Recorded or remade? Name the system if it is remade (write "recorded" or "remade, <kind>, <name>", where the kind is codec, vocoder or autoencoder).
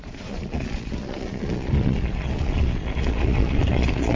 remade, vocoder, Vocos